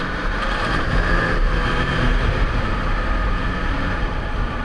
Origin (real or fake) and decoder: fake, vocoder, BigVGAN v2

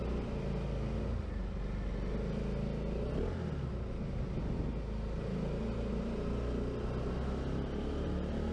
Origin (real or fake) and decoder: real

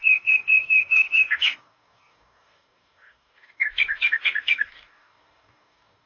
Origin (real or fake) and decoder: fake, codec, DAC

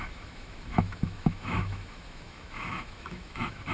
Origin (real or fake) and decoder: fake, autoencoder, DAC-VAE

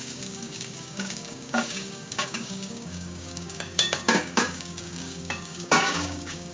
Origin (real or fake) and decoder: fake, codec, DAC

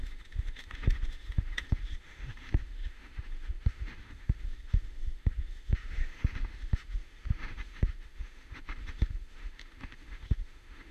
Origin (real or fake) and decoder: fake, autoencoder, DAC-VAE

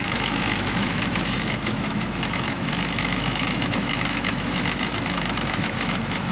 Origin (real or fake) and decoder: fake, autoencoder, DAC-VAE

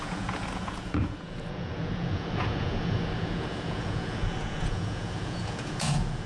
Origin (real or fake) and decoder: fake, vocoder, Vocos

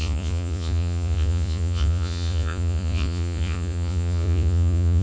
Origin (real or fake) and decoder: fake, vocoder, Vocos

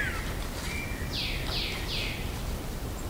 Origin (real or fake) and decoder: real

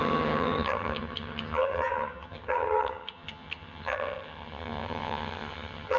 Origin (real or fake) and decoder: fake, vocoder, HiFi-GAN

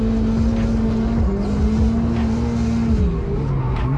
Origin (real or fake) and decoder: real